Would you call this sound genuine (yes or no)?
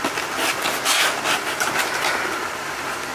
yes